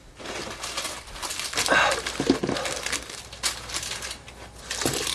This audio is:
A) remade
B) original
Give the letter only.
B